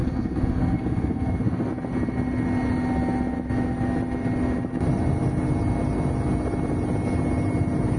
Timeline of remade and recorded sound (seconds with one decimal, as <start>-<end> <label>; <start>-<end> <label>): 0.0-1.7 remade; 1.7-8.0 recorded

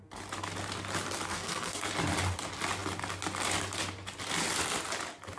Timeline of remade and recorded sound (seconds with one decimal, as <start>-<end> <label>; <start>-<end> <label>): 0.0-1.3 recorded; 1.3-1.9 remade; 1.9-5.4 recorded

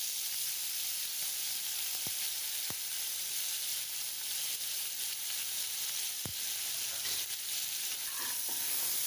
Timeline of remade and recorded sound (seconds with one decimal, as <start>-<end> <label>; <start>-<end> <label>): 0.0-9.1 recorded

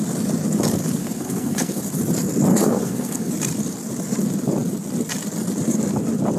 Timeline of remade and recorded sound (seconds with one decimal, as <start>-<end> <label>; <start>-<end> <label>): 0.0-1.0 recorded; 1.0-1.8 remade; 1.8-2.5 recorded; 2.5-3.3 remade; 3.3-6.4 recorded

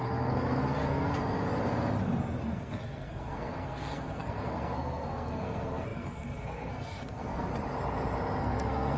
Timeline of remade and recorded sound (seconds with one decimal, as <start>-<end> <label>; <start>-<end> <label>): 0.0-1.2 remade; 1.2-2.4 recorded; 2.4-7.5 remade; 7.5-8.4 recorded; 8.4-9.0 remade